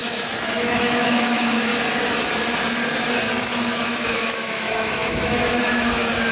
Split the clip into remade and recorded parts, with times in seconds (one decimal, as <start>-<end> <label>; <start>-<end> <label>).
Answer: 0.0-1.7 remade; 1.7-3.4 recorded; 3.4-6.3 remade

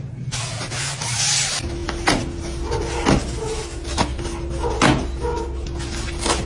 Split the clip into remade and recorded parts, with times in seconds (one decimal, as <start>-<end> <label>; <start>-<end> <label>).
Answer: 0.0-6.5 recorded

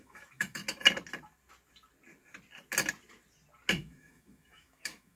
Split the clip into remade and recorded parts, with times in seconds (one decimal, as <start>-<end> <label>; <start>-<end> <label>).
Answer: 0.0-0.6 remade; 0.6-3.7 recorded; 3.7-5.2 remade

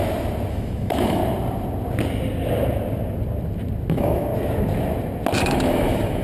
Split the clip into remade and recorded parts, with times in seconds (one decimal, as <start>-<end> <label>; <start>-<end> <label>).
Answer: 0.0-0.5 recorded; 0.5-1.2 remade; 1.2-3.9 recorded; 3.9-4.3 remade; 4.3-5.4 recorded; 5.4-6.2 remade